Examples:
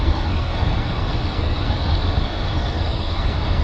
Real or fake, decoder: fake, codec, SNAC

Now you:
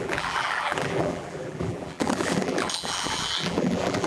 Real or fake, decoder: fake, vocoder, BigVGAN v2